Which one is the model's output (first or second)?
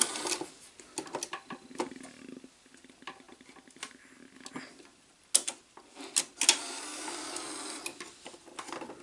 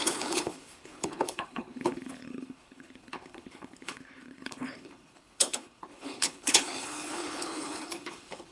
second